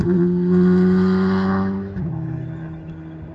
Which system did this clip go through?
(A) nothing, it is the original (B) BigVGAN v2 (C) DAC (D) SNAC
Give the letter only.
A